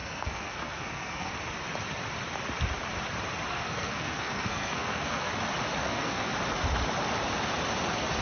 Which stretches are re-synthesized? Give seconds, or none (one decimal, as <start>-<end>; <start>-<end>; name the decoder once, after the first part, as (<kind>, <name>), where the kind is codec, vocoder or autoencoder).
0.0-1.3 (codec, SNAC); 3.5-5.3; 5.8-6.3